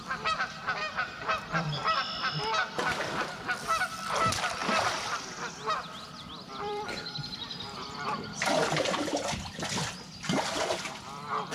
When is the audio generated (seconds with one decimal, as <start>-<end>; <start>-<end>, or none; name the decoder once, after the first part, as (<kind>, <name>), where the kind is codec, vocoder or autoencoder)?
0.0-1.8 (vocoder, BigVGAN v2); 3.8-4.6; 6.0-11.5